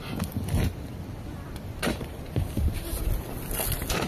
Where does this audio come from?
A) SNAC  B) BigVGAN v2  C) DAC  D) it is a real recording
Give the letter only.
D